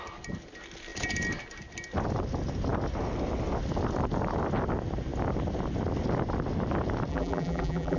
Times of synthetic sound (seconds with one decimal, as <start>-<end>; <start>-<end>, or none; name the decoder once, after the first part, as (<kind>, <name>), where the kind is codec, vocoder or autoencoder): 7.1-8.0 (vocoder, BigVGAN v2)